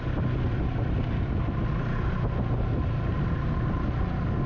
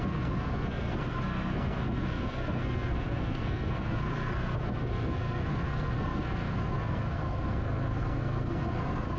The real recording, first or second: first